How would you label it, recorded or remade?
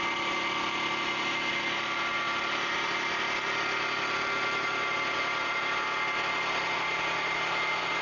recorded